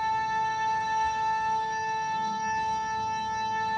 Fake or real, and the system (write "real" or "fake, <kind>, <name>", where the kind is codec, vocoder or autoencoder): fake, codec, DAC